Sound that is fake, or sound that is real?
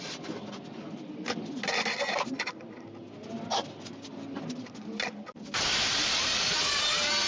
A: real